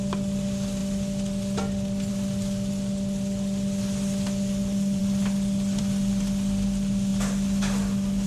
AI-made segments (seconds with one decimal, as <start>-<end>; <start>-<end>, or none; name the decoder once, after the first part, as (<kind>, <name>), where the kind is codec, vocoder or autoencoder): none